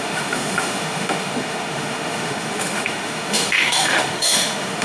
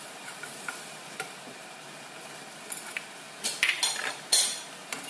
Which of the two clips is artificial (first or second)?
first